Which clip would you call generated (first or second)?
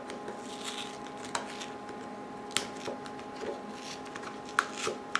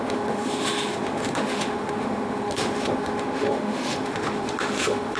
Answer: second